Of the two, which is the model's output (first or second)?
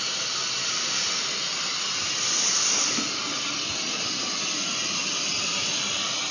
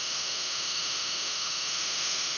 second